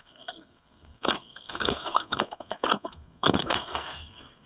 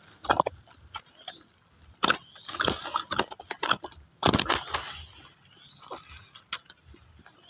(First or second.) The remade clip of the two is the first